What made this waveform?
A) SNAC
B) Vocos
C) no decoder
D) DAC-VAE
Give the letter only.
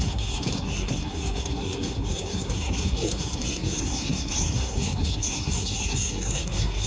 A